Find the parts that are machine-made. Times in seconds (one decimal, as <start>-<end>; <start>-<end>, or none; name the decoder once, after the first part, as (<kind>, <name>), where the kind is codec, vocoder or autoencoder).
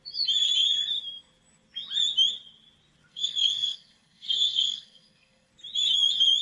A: 3.1-5.5 (codec, SNAC)